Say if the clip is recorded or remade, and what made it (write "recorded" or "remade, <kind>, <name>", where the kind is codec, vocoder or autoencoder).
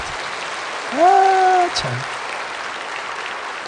recorded